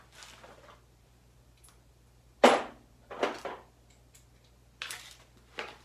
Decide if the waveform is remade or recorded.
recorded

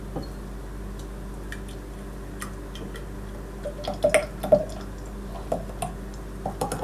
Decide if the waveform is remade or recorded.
recorded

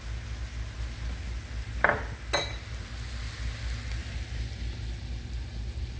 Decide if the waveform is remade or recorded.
recorded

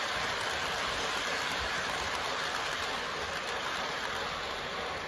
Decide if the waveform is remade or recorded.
recorded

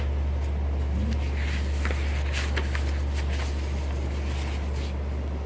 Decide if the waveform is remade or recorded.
recorded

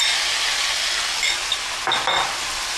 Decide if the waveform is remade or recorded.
recorded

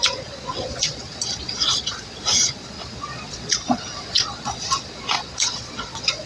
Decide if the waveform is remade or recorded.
remade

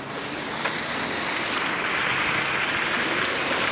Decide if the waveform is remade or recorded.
recorded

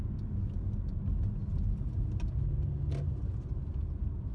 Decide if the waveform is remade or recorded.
recorded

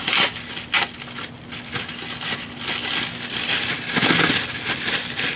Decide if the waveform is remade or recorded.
recorded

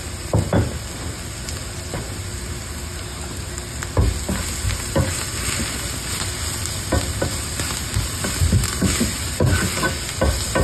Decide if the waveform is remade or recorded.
recorded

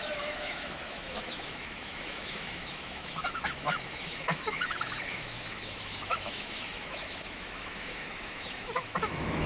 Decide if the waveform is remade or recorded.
remade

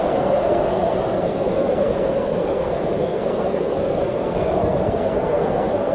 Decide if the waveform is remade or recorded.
remade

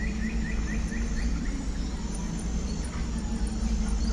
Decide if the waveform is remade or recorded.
recorded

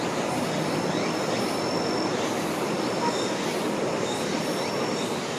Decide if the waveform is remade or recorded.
recorded